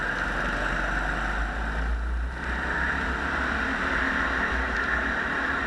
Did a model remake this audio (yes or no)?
no